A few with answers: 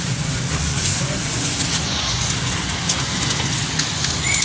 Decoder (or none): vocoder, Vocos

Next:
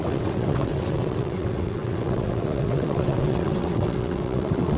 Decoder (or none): vocoder, WaveNeXt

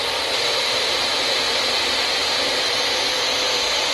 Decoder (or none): none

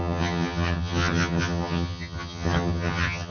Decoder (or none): vocoder, HiFi-GAN